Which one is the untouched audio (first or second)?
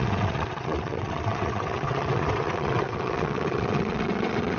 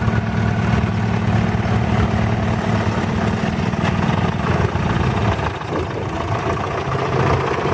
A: second